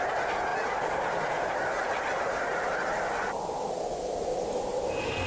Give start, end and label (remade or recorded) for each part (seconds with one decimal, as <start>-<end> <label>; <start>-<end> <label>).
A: 0.0-0.5 recorded; 0.5-3.7 remade; 3.7-5.3 recorded